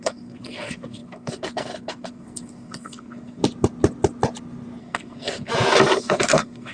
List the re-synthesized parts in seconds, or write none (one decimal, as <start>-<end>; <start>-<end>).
0.0-3.4; 4.8-5.5; 6.0-6.7